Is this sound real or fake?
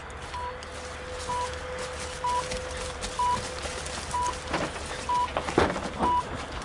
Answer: real